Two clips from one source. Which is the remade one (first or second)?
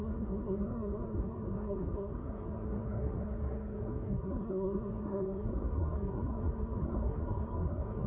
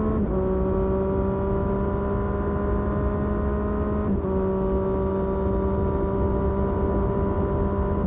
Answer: first